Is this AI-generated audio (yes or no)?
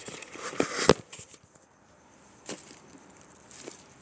yes